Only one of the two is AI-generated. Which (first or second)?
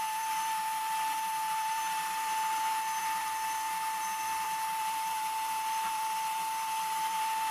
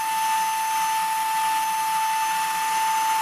first